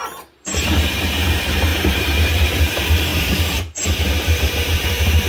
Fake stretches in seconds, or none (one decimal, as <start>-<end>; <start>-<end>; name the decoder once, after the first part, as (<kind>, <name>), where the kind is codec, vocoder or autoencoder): 0.0-5.3 (vocoder, BigVGAN v2)